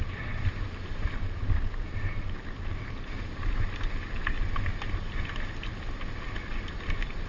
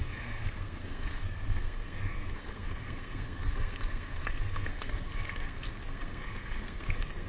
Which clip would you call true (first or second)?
first